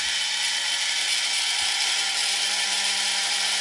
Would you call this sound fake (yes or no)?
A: no